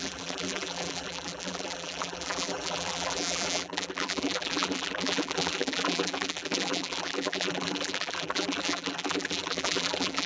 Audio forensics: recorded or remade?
remade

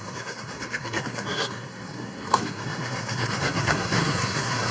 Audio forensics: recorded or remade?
remade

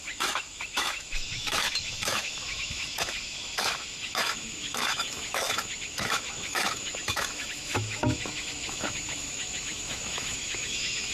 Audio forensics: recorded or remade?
remade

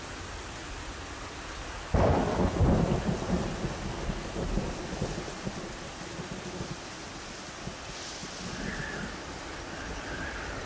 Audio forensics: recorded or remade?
recorded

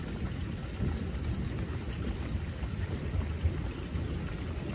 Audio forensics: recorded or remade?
recorded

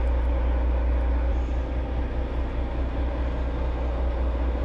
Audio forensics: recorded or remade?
recorded